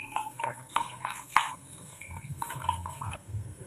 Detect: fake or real fake